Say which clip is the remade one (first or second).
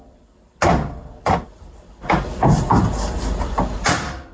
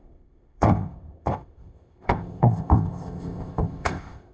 second